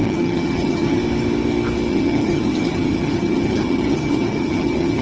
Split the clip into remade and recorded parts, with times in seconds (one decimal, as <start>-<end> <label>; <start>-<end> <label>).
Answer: 0.0-1.0 remade; 1.0-1.9 recorded; 1.9-5.0 remade

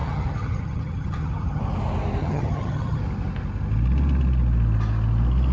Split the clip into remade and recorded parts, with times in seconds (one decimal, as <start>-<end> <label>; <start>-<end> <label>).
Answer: 0.0-1.6 remade; 1.6-2.2 recorded; 2.2-3.0 remade; 3.0-5.5 recorded

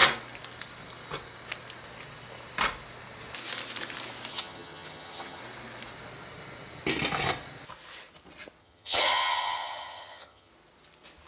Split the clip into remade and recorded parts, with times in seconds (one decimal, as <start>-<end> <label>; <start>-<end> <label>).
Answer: 0.0-4.3 recorded; 4.3-5.4 remade; 5.4-8.6 recorded; 8.6-10.5 remade; 10.5-11.3 recorded

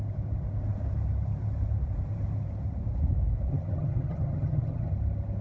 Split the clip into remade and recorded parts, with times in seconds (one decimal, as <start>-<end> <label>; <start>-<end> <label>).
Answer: 0.0-3.5 recorded; 3.5-4.9 remade; 4.9-5.4 recorded